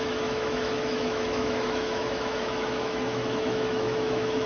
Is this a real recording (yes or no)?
no